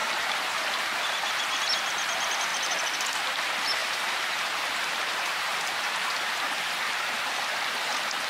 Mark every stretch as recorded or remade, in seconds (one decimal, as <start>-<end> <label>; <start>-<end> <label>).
0.0-1.6 remade; 1.6-3.8 recorded; 3.8-6.4 remade; 6.4-8.3 recorded